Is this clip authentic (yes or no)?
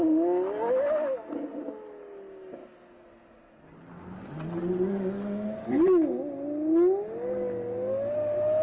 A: yes